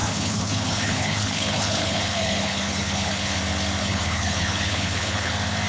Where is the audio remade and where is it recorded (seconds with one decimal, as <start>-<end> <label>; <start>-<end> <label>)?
0.0-3.4 remade; 3.4-3.8 recorded; 3.8-5.3 remade; 5.3-5.7 recorded